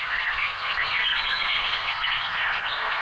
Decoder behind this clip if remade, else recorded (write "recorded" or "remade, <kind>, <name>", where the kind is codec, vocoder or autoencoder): remade, codec, SNAC